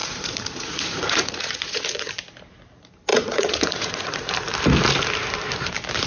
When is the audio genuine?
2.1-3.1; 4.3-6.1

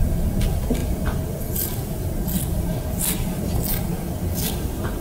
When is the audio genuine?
0.0-5.0